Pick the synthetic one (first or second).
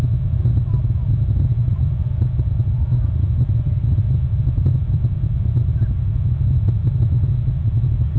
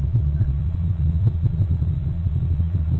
second